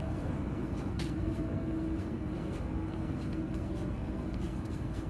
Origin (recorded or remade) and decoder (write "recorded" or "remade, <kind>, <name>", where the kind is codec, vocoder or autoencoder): remade, codec, SNAC